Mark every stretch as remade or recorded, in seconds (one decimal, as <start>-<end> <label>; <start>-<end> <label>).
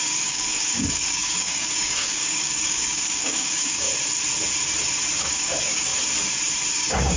0.0-3.9 remade; 3.9-5.2 recorded; 5.2-5.9 remade; 5.9-6.7 recorded; 6.7-7.2 remade